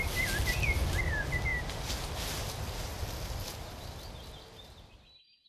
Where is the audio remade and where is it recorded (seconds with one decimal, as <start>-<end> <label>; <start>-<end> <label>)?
0.0-5.5 recorded